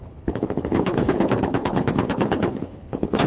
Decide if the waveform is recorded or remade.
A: remade